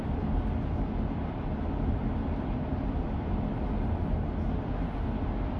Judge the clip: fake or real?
real